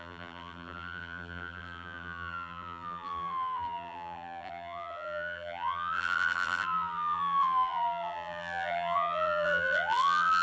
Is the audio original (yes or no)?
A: no